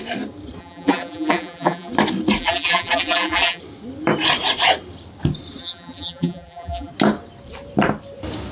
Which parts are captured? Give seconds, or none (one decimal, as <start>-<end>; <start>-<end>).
0.0-0.6; 1.9-2.4; 3.6-5.6; 6.9-8.5